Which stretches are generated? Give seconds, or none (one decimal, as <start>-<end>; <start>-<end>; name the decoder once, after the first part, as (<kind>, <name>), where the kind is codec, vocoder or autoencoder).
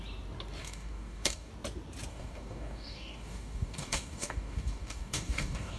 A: 0.6-1.5 (codec, DAC); 2.1-5.8